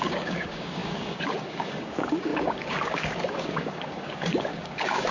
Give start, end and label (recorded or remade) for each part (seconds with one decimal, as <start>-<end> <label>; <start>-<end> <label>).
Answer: 0.0-5.1 remade